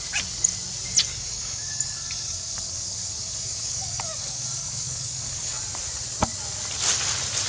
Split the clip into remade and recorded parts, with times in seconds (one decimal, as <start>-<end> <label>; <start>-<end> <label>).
0.0-1.1 recorded; 1.1-5.6 remade; 5.6-7.5 recorded